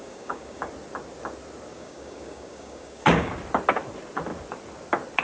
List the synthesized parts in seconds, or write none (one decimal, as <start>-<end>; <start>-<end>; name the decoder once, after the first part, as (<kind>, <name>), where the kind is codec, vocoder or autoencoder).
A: 0.0-0.7 (codec, DAC); 1.7-3.3